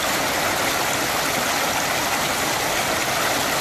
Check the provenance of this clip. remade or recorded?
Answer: recorded